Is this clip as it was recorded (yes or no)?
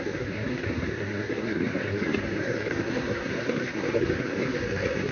no